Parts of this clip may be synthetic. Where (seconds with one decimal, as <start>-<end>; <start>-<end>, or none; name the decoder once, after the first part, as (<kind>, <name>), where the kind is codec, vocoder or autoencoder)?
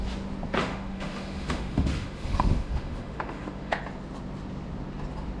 0.6-3.8 (autoencoder, DAC-VAE)